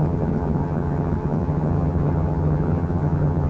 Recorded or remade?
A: remade